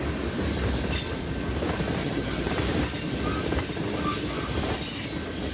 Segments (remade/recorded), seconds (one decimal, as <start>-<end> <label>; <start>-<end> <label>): 0.0-2.0 recorded; 2.0-2.5 remade; 2.5-5.5 recorded